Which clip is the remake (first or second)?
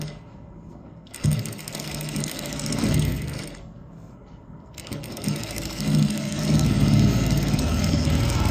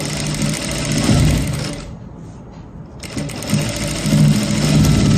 first